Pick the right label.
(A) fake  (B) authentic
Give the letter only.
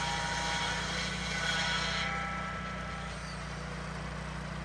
B